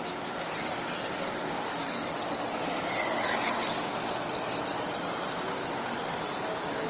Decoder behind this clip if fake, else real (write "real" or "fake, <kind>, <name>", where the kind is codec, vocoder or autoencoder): real